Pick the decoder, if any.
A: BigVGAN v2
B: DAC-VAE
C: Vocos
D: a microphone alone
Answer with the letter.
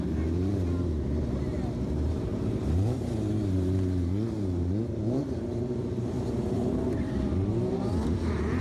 A